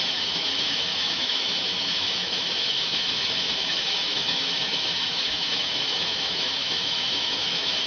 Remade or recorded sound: remade